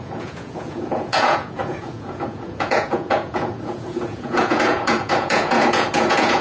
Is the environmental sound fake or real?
fake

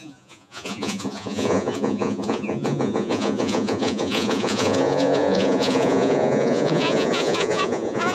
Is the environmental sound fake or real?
fake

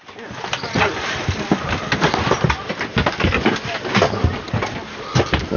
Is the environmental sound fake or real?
real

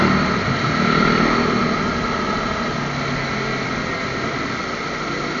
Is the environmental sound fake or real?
real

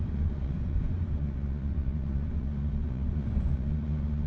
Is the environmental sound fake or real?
fake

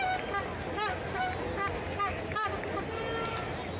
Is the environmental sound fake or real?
real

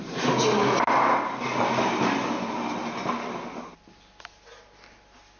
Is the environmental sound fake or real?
real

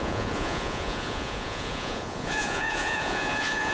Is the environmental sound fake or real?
fake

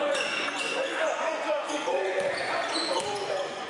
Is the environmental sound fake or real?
fake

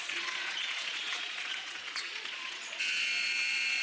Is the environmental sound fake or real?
fake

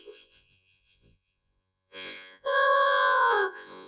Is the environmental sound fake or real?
fake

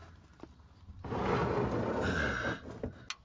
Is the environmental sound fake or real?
real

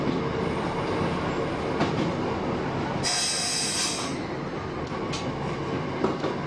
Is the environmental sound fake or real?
real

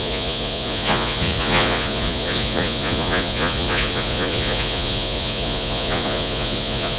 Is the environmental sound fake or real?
fake